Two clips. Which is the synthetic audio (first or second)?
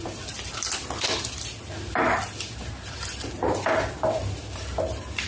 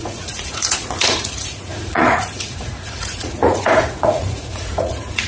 second